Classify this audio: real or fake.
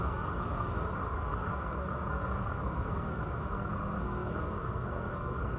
fake